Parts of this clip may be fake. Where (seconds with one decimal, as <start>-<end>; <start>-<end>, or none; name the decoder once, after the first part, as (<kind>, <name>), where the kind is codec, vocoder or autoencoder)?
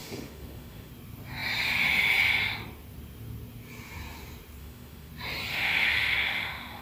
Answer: 0.0-0.9 (autoencoder, DAC-VAE); 4.6-5.1; 5.5-6.8